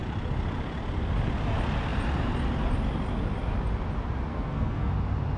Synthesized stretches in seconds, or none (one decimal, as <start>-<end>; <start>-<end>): 4.3-4.9